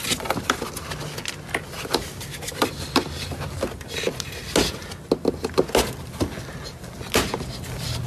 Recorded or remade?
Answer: recorded